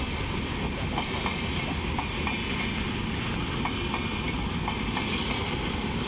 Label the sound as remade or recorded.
recorded